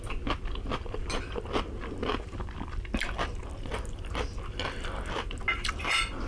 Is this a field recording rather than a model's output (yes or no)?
yes